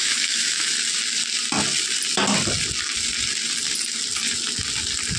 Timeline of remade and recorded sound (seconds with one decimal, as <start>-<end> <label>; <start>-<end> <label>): 0.0-0.7 remade; 0.7-5.2 recorded